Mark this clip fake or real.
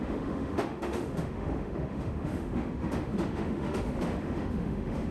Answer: fake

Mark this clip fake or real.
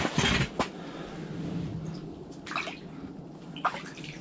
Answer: real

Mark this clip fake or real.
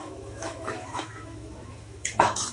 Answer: fake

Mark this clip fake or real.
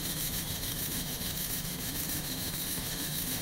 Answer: fake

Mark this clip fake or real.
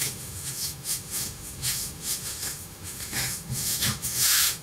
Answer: fake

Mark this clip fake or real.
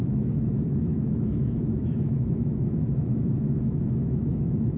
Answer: fake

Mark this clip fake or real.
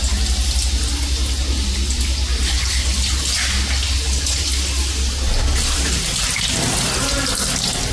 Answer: real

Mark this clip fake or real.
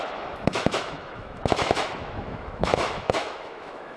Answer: fake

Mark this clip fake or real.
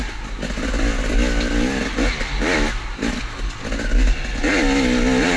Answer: real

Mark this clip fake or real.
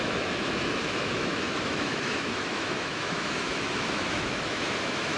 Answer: fake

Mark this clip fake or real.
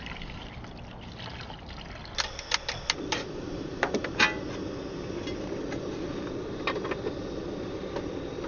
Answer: real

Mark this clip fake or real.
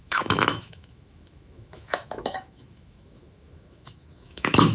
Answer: fake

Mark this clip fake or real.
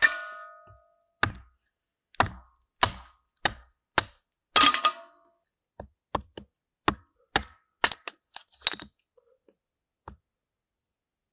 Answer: real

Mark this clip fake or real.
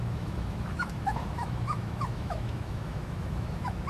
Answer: fake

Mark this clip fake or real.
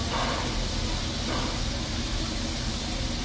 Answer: real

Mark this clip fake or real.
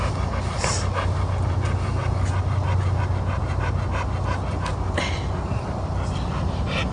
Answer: real